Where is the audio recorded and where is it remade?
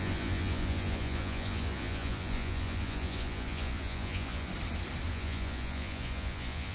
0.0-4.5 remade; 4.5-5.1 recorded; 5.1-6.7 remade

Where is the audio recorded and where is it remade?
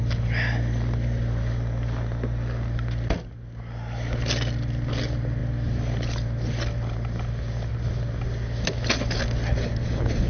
0.0-10.3 recorded